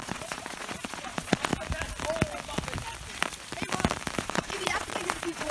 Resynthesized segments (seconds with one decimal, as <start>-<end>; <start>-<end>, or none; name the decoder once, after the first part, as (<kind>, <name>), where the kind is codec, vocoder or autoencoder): 0.0-1.5 (vocoder, Vocos); 4.2-5.5